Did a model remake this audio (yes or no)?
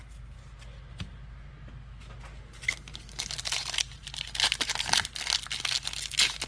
no